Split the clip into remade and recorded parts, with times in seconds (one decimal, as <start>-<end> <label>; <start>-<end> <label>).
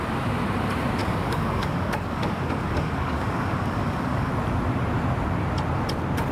0.0-1.0 recorded; 1.0-4.3 remade; 4.3-6.3 recorded